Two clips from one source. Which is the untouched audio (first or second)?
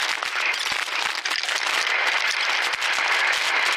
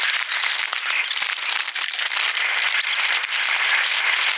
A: first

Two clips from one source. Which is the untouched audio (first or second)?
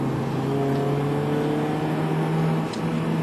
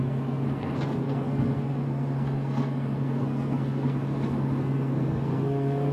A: first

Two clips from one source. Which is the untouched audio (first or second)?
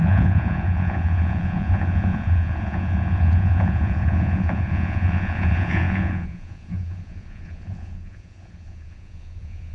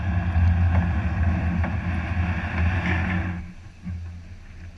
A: second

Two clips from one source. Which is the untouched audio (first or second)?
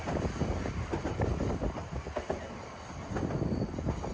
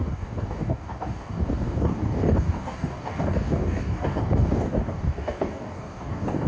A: first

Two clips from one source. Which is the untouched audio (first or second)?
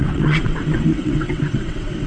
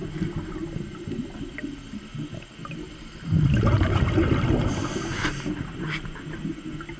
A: second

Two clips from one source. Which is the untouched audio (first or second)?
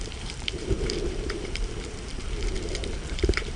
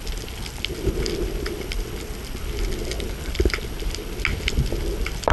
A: second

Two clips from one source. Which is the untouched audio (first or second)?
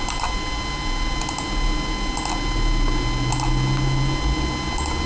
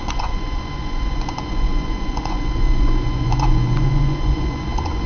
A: first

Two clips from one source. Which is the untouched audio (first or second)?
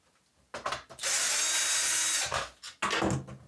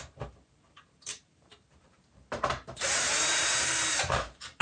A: first